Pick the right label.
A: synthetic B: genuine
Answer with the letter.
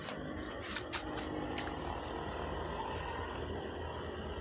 B